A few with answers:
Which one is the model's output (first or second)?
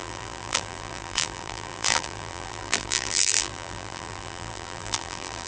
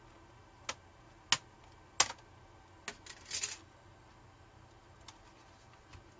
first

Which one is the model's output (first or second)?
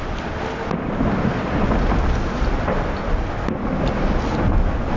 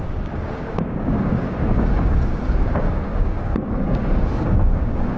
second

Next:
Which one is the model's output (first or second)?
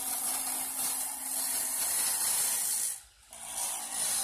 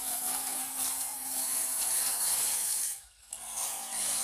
second